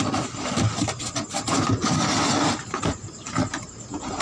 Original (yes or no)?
yes